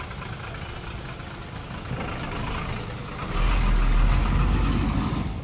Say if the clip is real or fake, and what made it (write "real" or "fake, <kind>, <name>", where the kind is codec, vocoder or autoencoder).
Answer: real